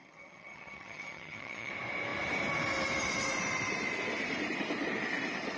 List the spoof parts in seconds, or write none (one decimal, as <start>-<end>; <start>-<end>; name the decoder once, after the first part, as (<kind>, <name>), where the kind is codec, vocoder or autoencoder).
0.0-1.7 (vocoder, HiFi-GAN)